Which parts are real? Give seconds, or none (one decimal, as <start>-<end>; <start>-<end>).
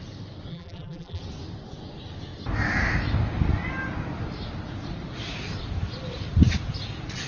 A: 0.0-0.5; 1.2-7.3